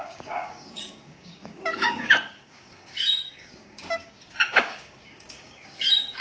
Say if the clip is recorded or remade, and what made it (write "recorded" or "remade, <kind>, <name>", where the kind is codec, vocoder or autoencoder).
remade, codec, DAC